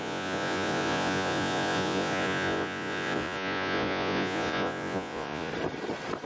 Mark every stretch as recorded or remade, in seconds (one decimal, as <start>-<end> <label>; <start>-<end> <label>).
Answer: 0.0-5.5 remade; 5.5-6.3 recorded